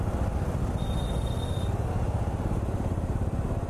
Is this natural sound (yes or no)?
yes